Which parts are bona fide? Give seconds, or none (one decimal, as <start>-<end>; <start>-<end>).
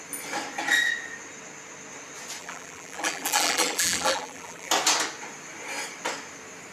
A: 0.0-2.4; 4.7-6.7